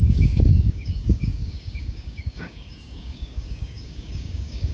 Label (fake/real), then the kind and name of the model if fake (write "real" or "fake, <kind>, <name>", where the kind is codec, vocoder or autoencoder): fake, codec, DAC